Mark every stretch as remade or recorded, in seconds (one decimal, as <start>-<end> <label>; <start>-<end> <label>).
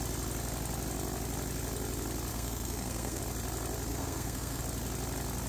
0.0-2.3 recorded; 2.3-3.2 remade; 3.2-3.9 recorded; 3.9-4.6 remade; 4.6-5.5 recorded